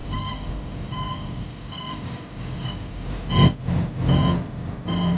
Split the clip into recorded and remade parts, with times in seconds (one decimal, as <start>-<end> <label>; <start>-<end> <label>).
0.0-3.1 remade; 3.1-5.2 recorded